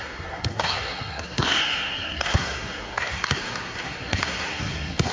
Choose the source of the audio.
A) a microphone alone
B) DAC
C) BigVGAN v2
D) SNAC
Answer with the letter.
D